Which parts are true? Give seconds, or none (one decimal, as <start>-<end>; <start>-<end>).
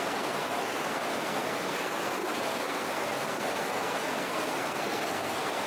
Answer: none